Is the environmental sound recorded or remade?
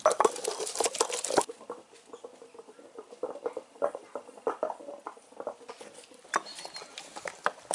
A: recorded